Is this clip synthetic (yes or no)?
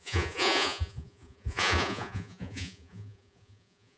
yes